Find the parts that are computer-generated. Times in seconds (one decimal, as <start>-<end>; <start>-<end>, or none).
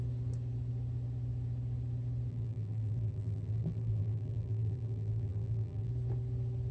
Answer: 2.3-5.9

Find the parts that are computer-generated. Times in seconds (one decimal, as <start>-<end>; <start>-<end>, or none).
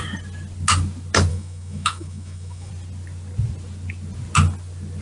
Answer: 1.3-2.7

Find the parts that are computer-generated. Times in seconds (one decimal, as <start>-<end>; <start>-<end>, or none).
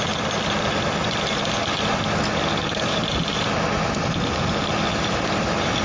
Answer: 4.9-5.8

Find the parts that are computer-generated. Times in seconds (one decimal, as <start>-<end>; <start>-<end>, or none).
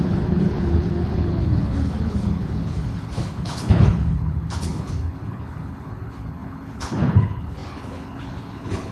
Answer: 0.0-8.9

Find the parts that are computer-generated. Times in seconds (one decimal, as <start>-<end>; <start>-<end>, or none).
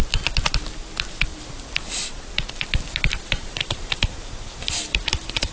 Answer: none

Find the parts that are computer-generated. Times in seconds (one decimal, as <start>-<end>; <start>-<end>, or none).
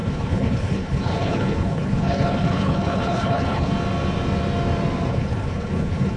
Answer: 0.0-3.7; 5.1-6.2